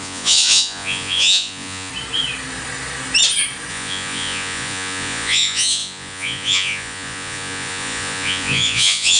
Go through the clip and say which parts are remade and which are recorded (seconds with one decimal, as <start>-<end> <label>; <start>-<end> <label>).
0.0-1.9 remade; 1.9-3.7 recorded; 3.7-9.2 remade